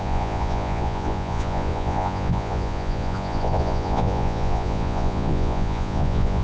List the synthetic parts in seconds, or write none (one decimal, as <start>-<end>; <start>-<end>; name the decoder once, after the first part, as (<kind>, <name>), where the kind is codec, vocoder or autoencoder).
0.0-6.4 (vocoder, Vocos)